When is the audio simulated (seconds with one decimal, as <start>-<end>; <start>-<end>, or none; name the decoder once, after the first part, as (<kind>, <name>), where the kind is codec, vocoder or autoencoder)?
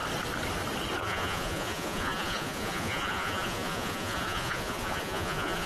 1.0-5.7 (vocoder, Vocos)